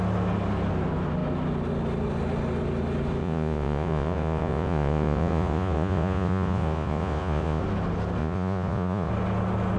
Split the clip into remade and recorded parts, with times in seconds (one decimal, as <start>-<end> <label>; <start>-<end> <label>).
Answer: 0.0-3.2 recorded; 3.2-7.6 remade; 7.6-8.2 recorded; 8.2-9.1 remade; 9.1-9.8 recorded